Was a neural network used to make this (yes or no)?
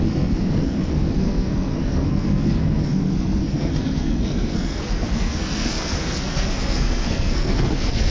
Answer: yes